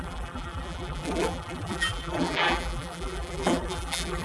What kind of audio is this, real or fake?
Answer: fake